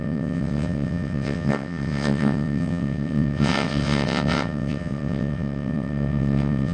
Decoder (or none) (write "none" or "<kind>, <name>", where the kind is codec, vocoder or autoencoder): vocoder, WaveNeXt